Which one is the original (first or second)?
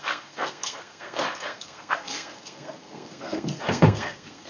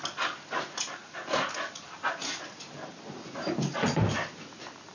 second